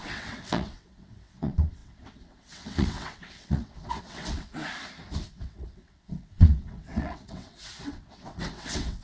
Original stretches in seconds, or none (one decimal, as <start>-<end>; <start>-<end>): 4.6-5.3